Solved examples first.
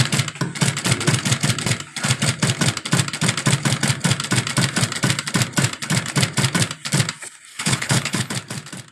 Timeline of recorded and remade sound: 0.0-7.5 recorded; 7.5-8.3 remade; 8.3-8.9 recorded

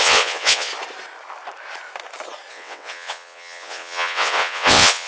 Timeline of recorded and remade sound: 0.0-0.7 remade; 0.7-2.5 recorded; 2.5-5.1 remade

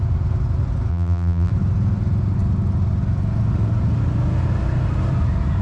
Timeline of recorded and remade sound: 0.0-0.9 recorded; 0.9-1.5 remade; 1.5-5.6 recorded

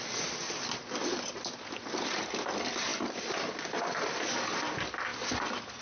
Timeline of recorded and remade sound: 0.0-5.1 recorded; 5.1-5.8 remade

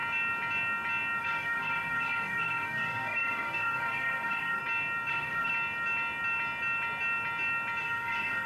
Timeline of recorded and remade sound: 0.0-1.2 recorded; 1.2-4.6 remade; 4.6-5.1 recorded; 5.1-5.5 remade; 5.5-7.8 recorded; 7.8-8.5 remade